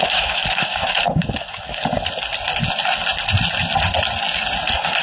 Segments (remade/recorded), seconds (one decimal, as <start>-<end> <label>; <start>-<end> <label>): 0.0-1.8 remade; 1.8-5.0 recorded